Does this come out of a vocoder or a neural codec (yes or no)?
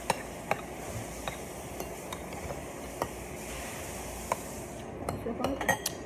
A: no